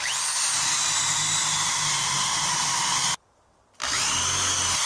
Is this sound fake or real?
real